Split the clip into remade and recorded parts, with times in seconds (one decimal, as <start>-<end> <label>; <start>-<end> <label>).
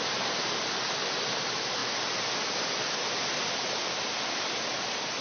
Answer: 0.0-1.8 recorded; 1.8-5.2 remade